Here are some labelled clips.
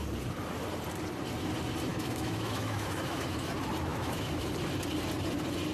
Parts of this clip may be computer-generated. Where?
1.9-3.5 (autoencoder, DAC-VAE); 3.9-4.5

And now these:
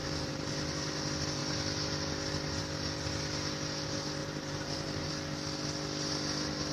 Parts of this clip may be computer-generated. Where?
0.0-0.5 (vocoder, BigVGAN v2); 4.2-5.1

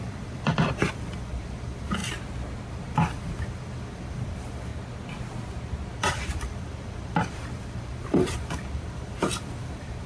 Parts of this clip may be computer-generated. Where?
0.0-2.0 (vocoder, BigVGAN v2); 2.7-4.7; 6.0-10.1

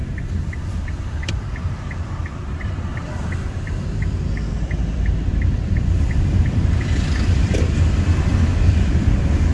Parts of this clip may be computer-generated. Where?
1.3-2.9 (vocoder, BigVGAN v2); 4.5-9.5

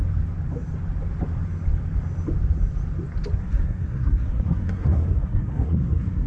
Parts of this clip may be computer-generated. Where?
3.4-6.3 (codec, SNAC)

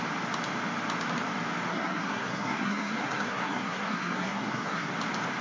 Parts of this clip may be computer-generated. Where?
1.7-4.9 (codec, SNAC)

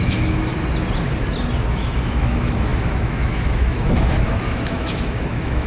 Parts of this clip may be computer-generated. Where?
0.0-0.5 (autoencoder, DAC-VAE); 1.7-5.7